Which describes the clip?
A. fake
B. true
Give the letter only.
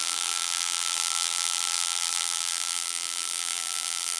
A